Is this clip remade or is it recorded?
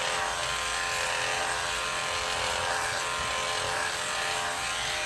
recorded